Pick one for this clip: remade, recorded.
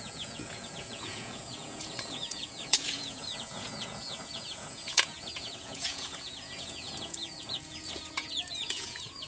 remade